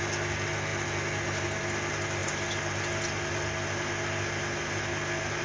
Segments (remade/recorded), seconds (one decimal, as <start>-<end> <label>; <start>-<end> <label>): 0.0-5.4 recorded